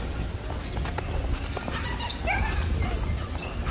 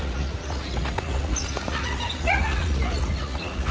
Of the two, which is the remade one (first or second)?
second